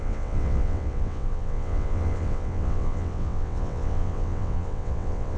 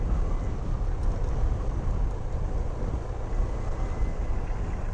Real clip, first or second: second